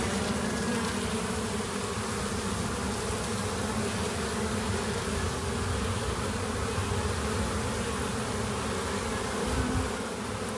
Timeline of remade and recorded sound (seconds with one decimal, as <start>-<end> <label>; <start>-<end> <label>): 0.0-10.6 recorded